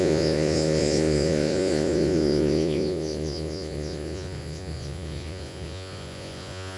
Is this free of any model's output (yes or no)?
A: no